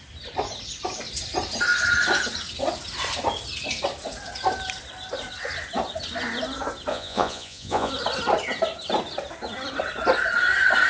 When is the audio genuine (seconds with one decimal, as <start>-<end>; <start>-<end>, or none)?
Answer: 0.0-6.9; 7.9-10.9